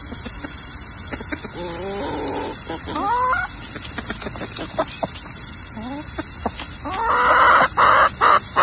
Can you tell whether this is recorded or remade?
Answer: recorded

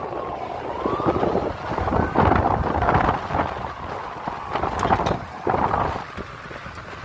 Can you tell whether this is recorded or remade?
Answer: recorded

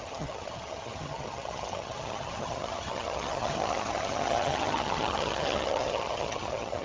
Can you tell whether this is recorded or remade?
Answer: remade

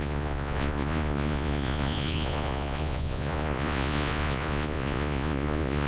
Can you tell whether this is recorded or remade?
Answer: remade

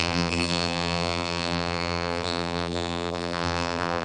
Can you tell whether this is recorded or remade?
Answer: remade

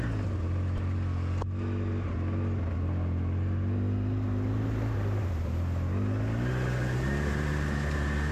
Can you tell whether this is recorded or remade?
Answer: recorded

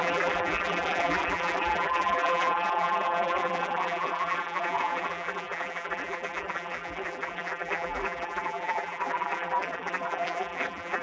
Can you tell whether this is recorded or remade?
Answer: remade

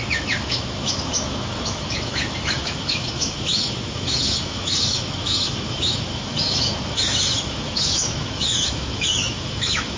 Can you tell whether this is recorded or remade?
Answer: remade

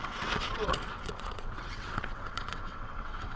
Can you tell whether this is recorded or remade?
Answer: remade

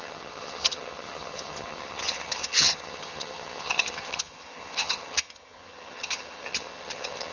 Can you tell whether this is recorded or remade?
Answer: remade